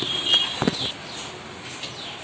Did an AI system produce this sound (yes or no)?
no